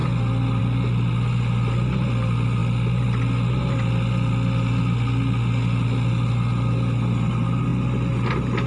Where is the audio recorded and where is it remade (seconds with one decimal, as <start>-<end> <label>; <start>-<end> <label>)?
0.0-8.7 recorded

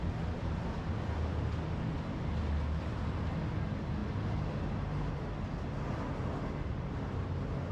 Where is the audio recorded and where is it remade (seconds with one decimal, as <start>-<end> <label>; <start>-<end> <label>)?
0.0-7.7 recorded

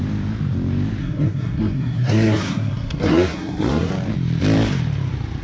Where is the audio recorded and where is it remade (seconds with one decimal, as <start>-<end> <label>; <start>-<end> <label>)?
0.0-1.0 recorded; 1.0-3.9 remade; 3.9-5.4 recorded